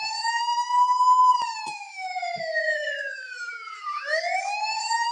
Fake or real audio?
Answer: fake